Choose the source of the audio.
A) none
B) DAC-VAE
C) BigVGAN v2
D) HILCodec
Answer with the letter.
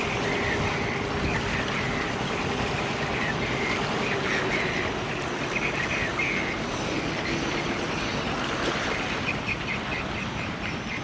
A